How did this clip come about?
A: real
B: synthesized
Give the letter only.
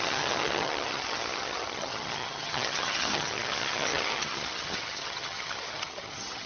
B